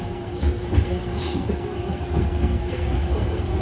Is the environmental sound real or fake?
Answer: fake